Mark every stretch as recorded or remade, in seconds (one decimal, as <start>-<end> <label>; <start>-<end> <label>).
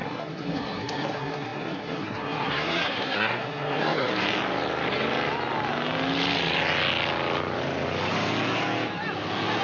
0.0-4.1 remade; 4.1-9.6 recorded